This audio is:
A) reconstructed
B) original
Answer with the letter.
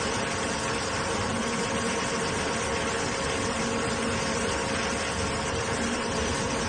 B